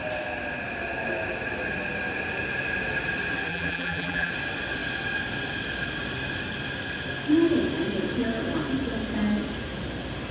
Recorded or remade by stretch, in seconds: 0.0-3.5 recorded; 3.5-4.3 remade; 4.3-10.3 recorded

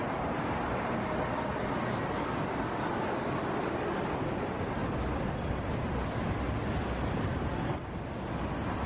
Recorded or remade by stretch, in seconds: 0.0-8.9 recorded

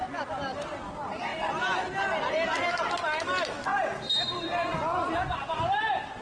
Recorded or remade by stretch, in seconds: 0.0-6.2 recorded

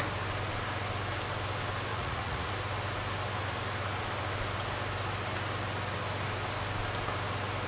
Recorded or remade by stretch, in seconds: 0.0-1.9 recorded; 1.9-2.5 remade; 2.5-7.7 recorded